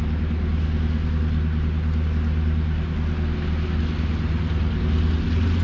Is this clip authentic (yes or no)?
yes